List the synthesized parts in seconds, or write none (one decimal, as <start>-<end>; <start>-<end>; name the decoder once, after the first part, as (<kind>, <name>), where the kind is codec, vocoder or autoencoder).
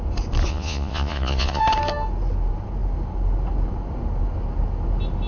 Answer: 0.5-1.6 (vocoder, Vocos)